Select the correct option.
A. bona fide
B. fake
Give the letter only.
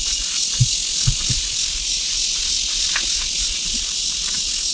A